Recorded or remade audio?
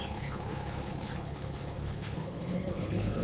remade